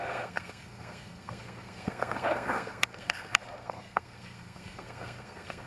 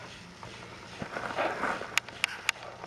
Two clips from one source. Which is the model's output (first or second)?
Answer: first